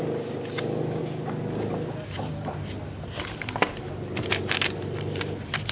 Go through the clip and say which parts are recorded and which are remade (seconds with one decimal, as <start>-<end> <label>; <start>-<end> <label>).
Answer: 0.0-5.7 recorded